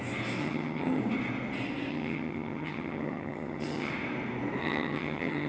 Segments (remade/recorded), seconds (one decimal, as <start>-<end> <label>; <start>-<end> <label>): 0.0-0.4 recorded; 0.4-1.0 remade; 1.0-1.9 recorded; 1.9-3.9 remade; 3.9-4.6 recorded; 4.6-5.5 remade